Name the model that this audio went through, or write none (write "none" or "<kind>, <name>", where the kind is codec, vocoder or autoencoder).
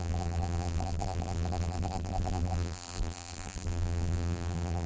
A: vocoder, BigVGAN v2